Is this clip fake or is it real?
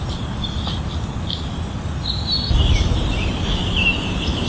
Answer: real